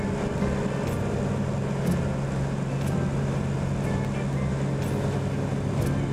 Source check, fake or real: real